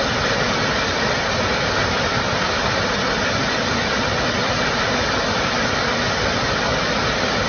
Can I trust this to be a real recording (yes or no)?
yes